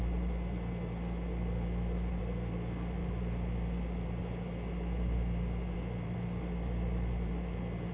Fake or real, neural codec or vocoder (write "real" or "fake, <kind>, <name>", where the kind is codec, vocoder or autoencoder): real